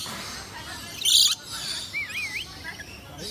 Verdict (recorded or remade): recorded